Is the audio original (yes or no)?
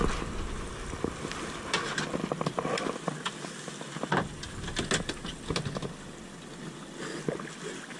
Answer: yes